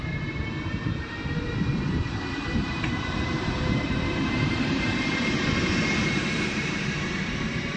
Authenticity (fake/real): fake